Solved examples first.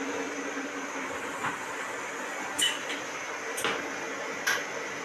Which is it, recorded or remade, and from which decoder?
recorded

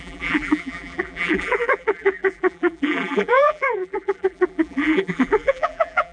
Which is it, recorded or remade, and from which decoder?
remade, vocoder, BigVGAN v2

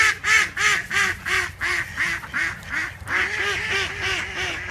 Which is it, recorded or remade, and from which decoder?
recorded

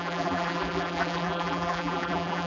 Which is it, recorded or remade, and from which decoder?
remade, vocoder, BigVGAN v2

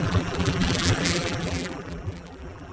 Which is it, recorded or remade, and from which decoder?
remade, vocoder, BigVGAN v2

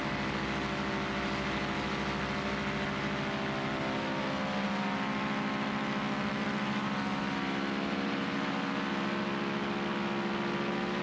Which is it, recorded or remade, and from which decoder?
recorded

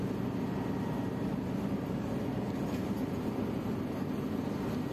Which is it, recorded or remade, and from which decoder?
recorded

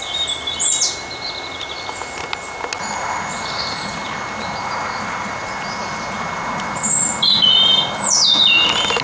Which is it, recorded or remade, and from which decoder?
recorded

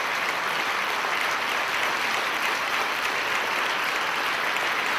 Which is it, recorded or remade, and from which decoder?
recorded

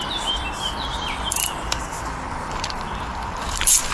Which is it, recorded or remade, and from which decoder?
remade, vocoder, BigVGAN v2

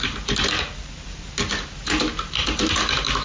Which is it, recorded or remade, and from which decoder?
remade, vocoder, BigVGAN v2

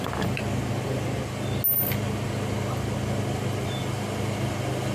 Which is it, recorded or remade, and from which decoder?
recorded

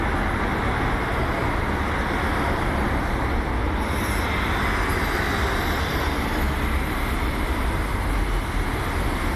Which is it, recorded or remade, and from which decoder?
recorded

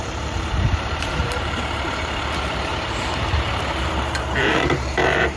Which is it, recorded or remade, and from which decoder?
remade, vocoder, BigVGAN v2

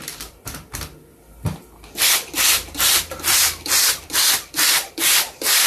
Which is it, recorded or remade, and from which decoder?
remade, vocoder, BigVGAN v2